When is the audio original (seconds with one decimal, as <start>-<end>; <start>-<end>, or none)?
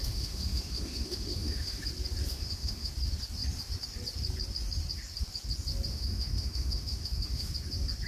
1.8-2.3; 2.9-5.9; 7.5-8.1